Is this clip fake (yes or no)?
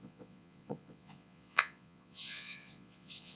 yes